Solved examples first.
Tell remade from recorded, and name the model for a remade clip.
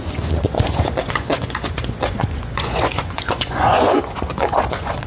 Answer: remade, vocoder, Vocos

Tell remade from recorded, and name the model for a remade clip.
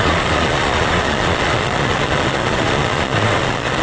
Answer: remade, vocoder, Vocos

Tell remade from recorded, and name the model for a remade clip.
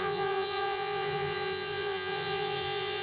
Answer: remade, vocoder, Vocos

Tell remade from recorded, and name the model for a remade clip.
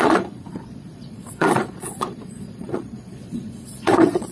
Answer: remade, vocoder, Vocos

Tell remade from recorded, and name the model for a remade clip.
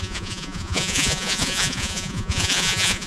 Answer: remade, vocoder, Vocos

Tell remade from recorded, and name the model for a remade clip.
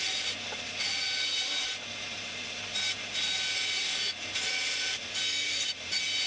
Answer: recorded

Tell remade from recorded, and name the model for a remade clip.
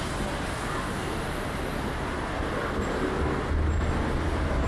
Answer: recorded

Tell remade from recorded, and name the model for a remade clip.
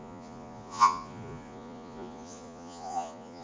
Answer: remade, vocoder, Vocos